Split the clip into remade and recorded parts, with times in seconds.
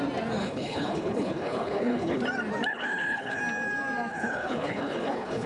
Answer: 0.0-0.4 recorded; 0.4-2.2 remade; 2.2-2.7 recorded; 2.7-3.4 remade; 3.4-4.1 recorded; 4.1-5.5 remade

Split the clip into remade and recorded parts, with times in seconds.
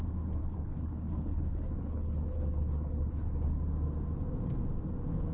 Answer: 0.0-0.4 recorded; 0.4-3.6 remade; 3.6-5.3 recorded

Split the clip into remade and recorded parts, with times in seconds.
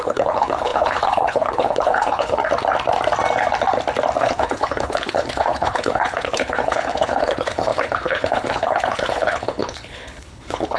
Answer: 0.0-2.4 remade; 2.4-4.2 recorded; 4.2-10.8 remade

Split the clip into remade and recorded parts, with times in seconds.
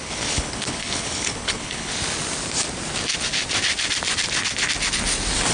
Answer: 0.0-1.9 remade; 1.9-5.5 recorded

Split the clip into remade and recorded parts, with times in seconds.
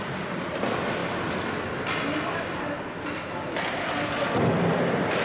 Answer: 0.0-5.2 recorded